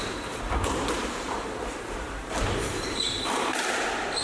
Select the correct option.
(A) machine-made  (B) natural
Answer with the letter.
A